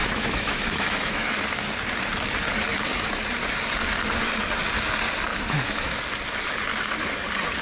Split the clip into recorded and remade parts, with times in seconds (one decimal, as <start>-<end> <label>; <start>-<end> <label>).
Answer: 0.0-1.4 remade; 1.4-5.3 recorded; 5.3-5.9 remade; 5.9-7.6 recorded